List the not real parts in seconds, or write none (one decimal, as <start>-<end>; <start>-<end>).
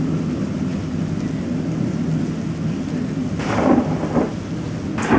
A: none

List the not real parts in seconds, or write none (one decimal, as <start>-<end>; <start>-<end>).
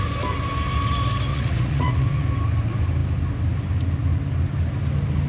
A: 1.3-2.3